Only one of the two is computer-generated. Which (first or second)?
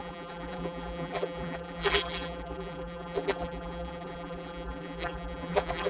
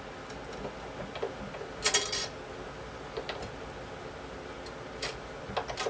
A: first